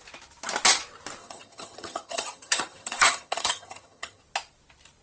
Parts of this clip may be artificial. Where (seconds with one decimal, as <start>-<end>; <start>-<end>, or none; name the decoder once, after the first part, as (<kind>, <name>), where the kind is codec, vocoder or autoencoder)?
1.2-4.2 (vocoder, HiFi-GAN)